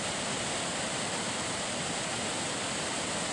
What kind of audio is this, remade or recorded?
recorded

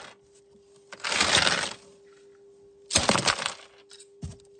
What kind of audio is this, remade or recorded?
recorded